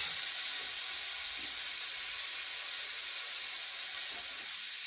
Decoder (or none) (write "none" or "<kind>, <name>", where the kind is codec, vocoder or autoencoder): vocoder, BigVGAN v2